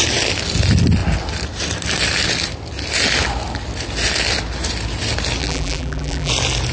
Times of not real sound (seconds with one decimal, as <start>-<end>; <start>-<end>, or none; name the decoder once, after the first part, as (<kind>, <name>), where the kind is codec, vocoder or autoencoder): 5.4-6.3 (vocoder, BigVGAN v2)